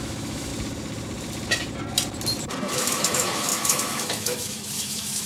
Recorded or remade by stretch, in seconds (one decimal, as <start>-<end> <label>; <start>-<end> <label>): 0.0-0.5 remade; 0.5-2.7 recorded; 2.7-5.3 remade

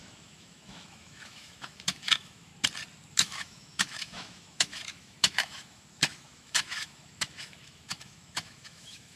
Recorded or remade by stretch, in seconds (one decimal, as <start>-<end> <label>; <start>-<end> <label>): 0.0-2.5 remade; 2.5-3.1 recorded; 3.1-9.2 remade

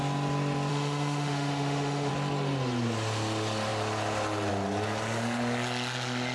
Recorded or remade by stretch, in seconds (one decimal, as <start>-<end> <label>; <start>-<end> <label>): 0.0-0.7 recorded; 0.7-2.1 remade; 2.1-6.3 recorded

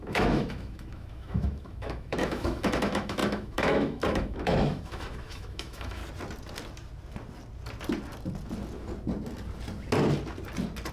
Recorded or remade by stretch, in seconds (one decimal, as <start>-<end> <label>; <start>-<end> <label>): 0.0-6.0 remade; 6.0-10.9 recorded